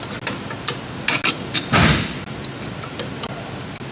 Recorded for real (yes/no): yes